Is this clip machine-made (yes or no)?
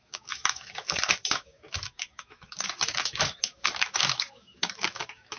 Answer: yes